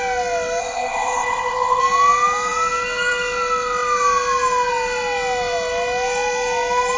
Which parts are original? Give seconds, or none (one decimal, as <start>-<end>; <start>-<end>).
0.0-0.6; 1.8-7.0